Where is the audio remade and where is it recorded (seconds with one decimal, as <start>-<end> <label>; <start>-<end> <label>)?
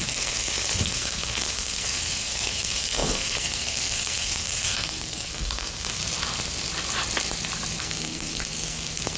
0.0-6.0 remade; 6.0-7.8 recorded; 7.8-9.2 remade